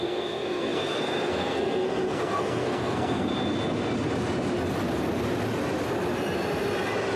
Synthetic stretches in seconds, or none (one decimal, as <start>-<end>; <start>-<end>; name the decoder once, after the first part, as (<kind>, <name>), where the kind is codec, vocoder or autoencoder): 0.0-3.3 (codec, SNAC)